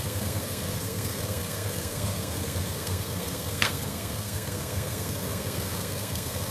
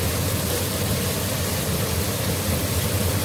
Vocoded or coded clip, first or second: first